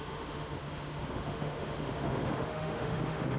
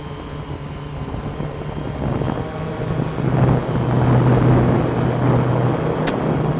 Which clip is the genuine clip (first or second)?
second